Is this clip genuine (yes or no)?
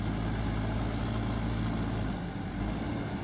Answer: yes